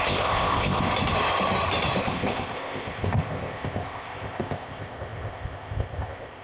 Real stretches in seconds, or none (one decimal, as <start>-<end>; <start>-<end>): 0.9-2.0